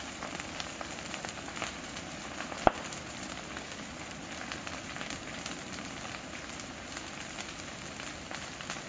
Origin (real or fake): real